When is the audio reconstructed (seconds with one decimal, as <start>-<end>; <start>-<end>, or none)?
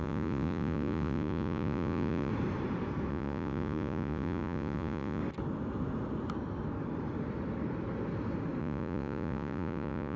0.0-2.3; 3.1-5.2; 8.6-10.2